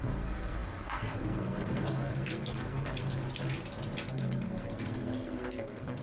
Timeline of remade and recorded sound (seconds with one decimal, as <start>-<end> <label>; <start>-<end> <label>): 0.0-3.2 remade; 3.2-4.1 recorded; 4.1-6.0 remade